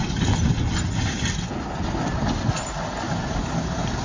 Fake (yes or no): no